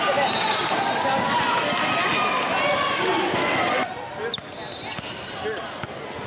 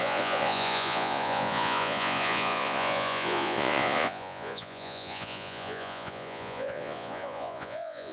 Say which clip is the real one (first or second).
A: first